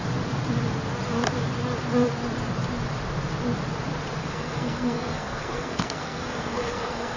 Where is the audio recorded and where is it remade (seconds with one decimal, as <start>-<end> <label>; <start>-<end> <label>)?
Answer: 0.0-4.2 recorded; 4.2-7.2 remade